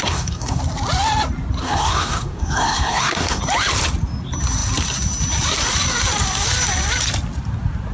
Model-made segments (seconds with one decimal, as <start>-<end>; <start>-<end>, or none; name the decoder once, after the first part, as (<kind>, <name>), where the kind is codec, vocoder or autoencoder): 0.0-0.6 (codec, SNAC); 1.6-3.4